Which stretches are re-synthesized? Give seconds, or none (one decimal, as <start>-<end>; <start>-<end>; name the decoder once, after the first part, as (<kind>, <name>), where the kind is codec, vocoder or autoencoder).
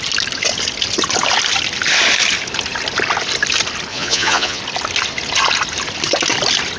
3.9-4.6 (vocoder, Vocos)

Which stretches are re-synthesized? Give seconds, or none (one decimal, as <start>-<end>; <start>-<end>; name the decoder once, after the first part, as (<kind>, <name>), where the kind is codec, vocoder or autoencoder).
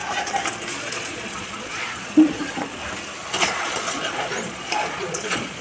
0.7-2.8 (vocoder, Vocos); 3.4-5.6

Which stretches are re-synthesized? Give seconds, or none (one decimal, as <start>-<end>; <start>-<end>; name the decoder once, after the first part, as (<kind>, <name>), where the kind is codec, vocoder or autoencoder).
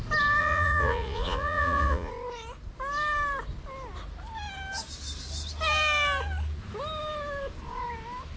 0.4-2.1 (vocoder, Vocos)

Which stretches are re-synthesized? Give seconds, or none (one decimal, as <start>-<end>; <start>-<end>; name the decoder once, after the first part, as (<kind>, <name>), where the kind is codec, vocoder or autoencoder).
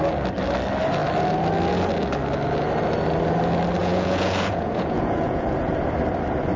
3.8-5.7 (vocoder, Vocos)